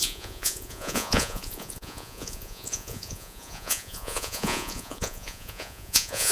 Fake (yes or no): yes